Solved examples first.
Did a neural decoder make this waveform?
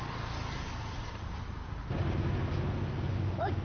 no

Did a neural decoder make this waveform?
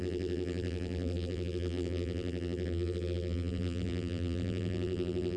yes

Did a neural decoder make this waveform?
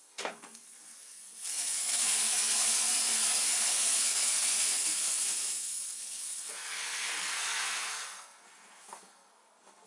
yes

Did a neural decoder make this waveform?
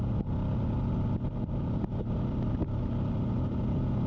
no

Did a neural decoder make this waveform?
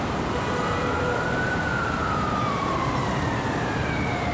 yes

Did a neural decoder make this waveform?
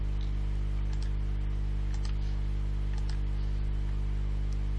no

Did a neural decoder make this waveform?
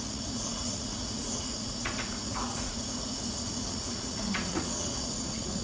yes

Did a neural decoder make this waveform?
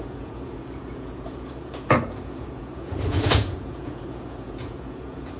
yes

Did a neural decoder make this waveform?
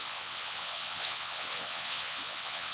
yes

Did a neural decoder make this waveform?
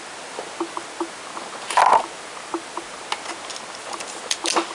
no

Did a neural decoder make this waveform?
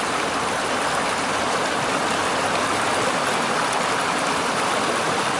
no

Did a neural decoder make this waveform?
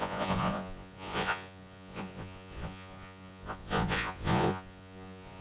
yes